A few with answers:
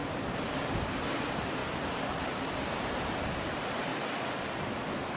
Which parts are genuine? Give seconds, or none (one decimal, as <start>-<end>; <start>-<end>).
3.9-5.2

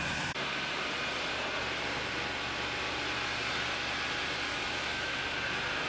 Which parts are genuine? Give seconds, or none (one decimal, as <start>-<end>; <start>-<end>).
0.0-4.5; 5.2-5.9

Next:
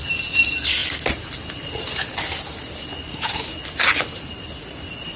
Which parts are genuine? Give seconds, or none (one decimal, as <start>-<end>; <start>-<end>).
0.0-5.2

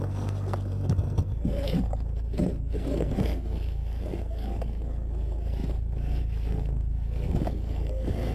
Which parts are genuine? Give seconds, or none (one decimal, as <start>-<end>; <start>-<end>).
none

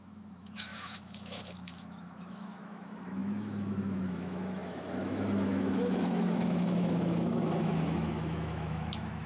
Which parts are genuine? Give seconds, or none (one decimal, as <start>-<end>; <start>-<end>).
none

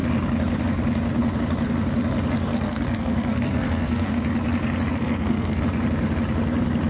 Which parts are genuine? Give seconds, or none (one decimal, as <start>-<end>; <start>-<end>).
0.0-2.5; 4.1-4.9; 5.6-6.9